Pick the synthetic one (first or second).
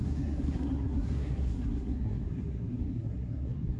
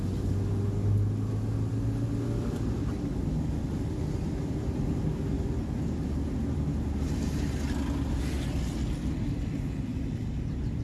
first